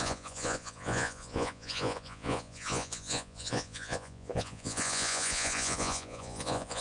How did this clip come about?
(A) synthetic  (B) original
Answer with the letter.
A